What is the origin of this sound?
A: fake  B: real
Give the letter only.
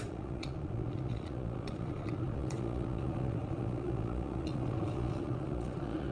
A